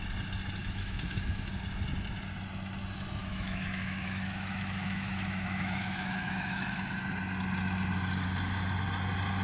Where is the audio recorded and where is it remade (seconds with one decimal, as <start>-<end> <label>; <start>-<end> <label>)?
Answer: 0.0-0.6 recorded; 0.6-1.5 remade; 1.5-3.2 recorded; 3.2-6.9 remade; 6.9-9.4 recorded